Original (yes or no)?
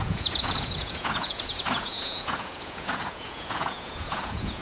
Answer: no